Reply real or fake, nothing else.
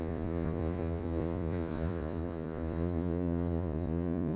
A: fake